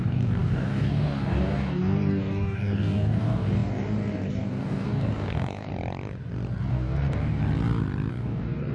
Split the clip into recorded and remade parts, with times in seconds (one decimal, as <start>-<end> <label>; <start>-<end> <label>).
0.0-5.7 remade; 5.7-6.7 recorded; 6.7-7.4 remade; 7.4-8.1 recorded; 8.1-8.7 remade